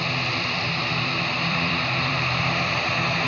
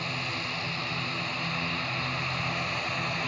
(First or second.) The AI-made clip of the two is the first